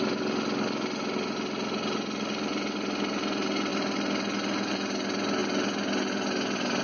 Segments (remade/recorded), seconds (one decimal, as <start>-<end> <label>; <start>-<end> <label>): 0.0-6.8 recorded